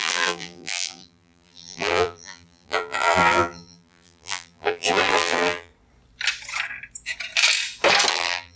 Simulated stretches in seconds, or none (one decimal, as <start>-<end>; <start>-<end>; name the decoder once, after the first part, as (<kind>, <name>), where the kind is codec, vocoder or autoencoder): 0.0-5.7 (vocoder, BigVGAN v2); 8.1-8.6